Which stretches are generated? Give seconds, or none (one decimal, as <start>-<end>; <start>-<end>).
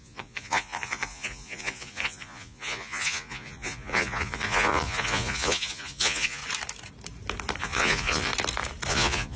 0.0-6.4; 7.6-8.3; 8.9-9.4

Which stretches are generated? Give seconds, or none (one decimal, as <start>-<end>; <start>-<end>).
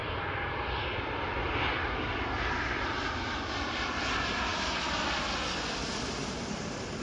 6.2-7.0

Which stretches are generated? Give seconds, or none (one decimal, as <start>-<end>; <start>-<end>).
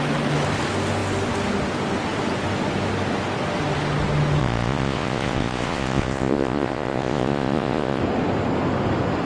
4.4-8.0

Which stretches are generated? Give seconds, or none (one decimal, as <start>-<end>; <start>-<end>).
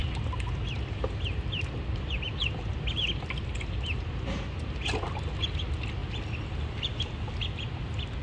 none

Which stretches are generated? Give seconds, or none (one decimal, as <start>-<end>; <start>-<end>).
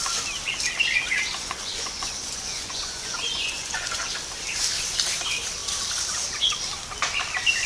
1.3-4.1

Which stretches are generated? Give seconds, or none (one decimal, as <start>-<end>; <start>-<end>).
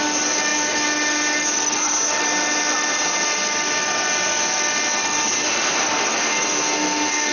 6.1-7.3